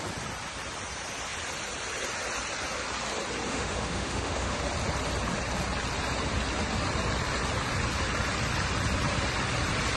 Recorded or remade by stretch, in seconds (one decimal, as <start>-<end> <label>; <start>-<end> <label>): 0.0-3.5 recorded; 3.5-4.6 remade; 4.6-10.0 recorded